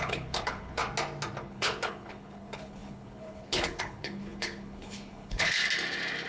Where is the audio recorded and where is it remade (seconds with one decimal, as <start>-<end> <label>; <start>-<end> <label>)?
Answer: 0.0-0.8 remade; 0.8-1.4 recorded; 1.4-5.6 remade; 5.6-6.3 recorded